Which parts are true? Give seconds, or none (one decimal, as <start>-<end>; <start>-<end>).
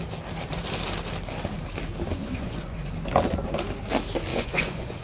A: 0.0-2.1; 2.9-4.3